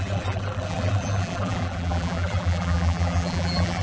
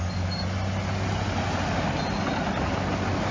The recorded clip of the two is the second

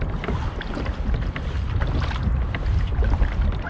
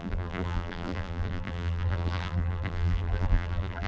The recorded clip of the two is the first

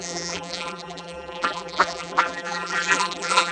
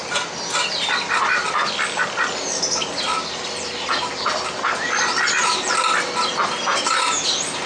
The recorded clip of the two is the second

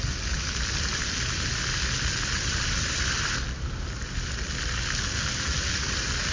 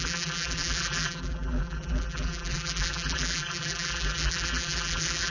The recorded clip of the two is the first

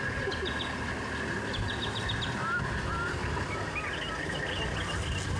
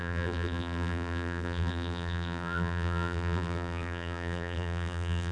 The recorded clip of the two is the first